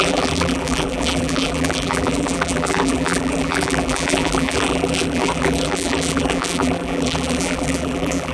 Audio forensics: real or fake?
fake